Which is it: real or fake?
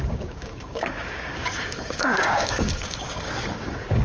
fake